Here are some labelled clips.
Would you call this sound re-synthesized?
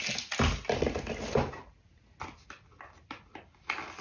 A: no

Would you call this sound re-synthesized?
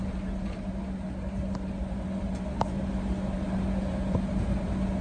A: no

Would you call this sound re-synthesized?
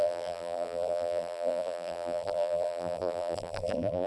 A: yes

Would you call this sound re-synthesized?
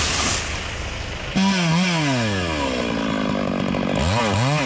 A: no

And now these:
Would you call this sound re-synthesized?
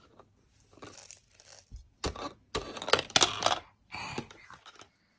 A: no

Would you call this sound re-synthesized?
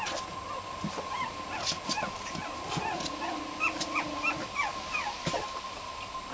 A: no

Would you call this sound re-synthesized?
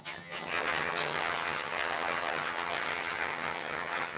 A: yes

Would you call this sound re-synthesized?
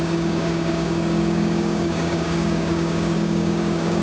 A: yes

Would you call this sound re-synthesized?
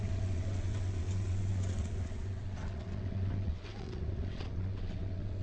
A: yes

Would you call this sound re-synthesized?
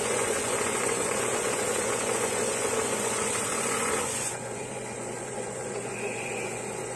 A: yes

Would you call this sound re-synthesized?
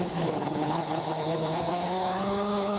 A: yes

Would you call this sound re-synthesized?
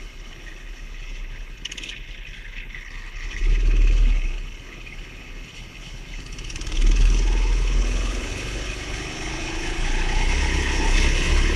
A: yes